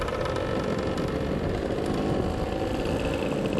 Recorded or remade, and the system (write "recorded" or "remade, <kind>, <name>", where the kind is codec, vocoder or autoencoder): recorded